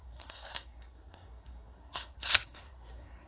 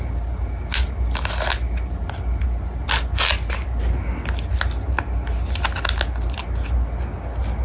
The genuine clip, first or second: second